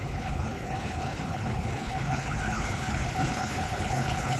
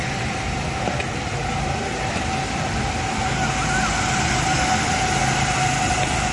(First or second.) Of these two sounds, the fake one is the first